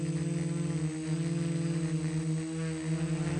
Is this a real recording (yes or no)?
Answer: yes